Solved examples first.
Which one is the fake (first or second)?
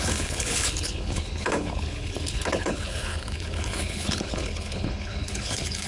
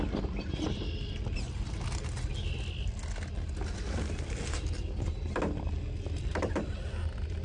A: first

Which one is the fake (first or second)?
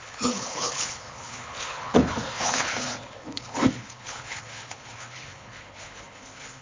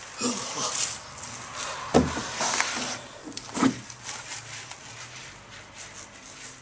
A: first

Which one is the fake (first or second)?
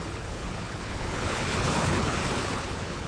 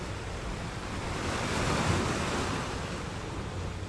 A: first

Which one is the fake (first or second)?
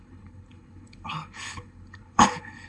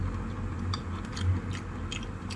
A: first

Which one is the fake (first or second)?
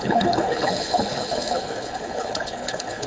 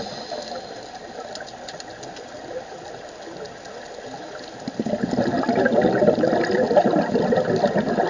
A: first